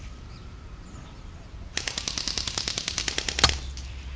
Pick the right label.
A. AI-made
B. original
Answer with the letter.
B